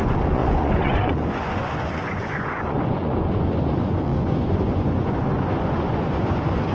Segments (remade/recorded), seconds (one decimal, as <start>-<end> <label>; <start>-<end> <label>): 0.0-6.7 remade